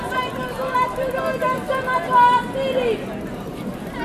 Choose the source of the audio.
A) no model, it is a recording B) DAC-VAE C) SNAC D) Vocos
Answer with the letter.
A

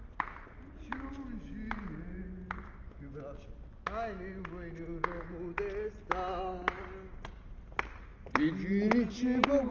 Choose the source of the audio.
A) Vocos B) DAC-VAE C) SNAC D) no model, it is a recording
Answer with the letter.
D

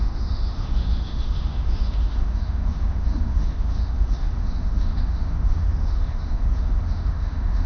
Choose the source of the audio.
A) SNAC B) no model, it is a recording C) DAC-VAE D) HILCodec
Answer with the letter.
C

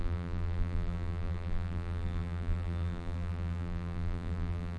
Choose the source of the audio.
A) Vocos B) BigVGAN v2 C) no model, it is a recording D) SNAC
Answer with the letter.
B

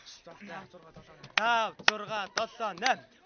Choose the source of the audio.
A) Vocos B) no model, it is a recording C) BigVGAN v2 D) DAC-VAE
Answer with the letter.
B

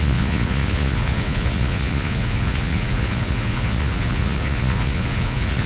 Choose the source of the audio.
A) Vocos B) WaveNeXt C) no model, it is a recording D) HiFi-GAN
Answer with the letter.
A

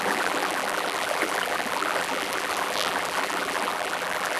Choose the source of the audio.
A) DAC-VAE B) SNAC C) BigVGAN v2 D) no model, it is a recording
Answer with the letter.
C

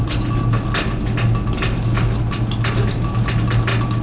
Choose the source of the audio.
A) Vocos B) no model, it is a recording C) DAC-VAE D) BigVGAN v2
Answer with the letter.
B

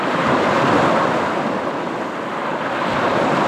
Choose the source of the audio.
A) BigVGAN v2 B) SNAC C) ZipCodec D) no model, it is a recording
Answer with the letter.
D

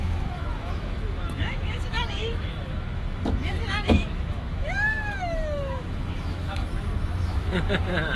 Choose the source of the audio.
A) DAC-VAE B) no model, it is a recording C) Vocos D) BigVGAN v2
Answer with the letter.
A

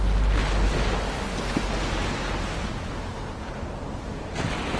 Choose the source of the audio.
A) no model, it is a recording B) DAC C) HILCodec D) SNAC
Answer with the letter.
A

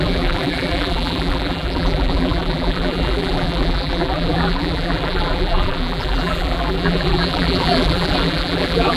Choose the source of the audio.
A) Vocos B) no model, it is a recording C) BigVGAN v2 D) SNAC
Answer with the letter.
C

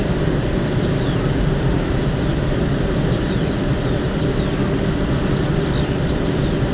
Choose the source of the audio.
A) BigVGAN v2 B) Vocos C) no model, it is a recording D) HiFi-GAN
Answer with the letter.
C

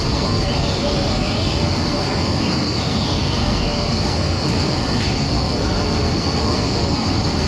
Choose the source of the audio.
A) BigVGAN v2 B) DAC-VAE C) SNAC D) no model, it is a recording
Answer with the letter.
C